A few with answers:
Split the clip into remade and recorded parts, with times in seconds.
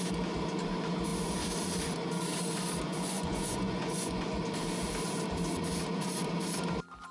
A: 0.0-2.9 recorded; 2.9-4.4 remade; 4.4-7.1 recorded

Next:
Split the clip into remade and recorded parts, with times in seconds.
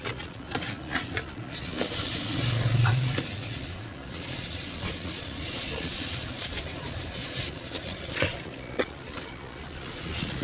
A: 0.0-10.4 remade